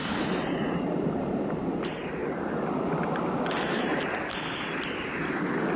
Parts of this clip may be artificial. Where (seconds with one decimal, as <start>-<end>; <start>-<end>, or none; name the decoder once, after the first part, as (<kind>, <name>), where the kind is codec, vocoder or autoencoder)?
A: none